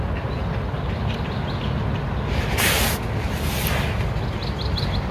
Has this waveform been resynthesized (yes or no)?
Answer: no